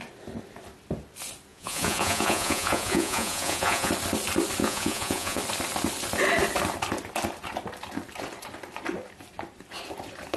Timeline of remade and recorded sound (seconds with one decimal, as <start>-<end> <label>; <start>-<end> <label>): 0.0-1.5 recorded; 1.5-3.9 remade; 3.9-4.6 recorded; 4.6-5.4 remade; 5.4-10.4 recorded